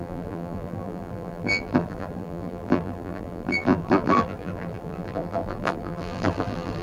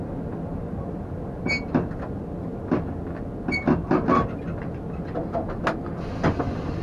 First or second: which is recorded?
second